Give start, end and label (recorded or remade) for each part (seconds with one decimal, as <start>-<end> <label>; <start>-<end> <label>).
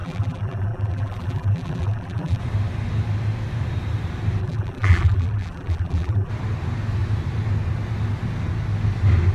0.0-2.4 remade; 2.4-4.4 recorded; 4.4-6.3 remade; 6.3-9.3 recorded